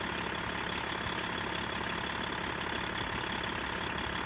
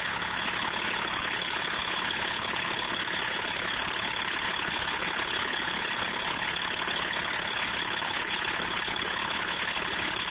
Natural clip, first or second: first